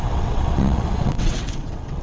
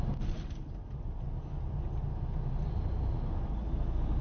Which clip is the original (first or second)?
second